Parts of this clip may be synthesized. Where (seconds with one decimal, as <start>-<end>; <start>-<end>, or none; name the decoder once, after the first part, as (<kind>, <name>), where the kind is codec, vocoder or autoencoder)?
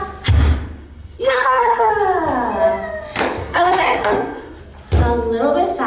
0.8-1.9 (codec, SNAC); 3.4-4.6